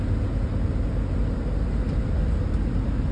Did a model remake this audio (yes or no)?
no